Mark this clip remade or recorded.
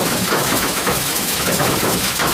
remade